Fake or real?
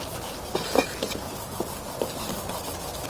real